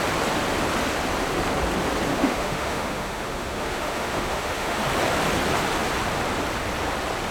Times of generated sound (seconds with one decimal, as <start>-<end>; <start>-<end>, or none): 2.1-4.8